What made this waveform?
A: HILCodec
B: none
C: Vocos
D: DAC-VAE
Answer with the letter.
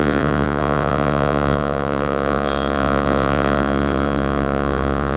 C